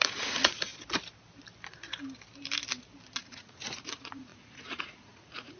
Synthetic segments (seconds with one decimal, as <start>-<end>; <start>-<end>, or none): 0.0-0.7; 3.2-5.6